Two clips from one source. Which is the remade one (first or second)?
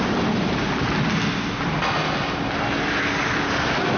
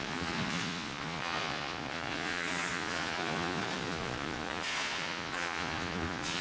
second